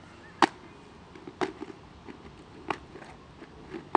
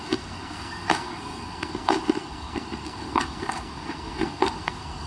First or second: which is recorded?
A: first